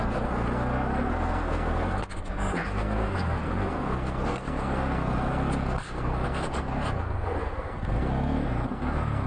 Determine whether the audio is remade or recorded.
remade